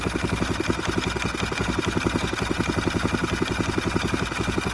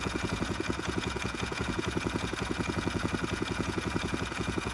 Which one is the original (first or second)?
first